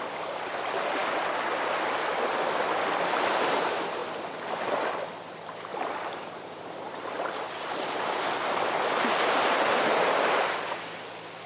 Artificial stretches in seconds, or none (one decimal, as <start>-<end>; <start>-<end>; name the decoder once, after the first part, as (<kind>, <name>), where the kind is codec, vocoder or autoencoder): 5.7-8.2 (vocoder, BigVGAN v2)